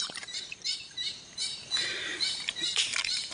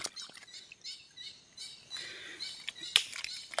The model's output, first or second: first